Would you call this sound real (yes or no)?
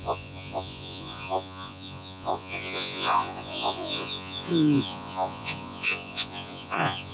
no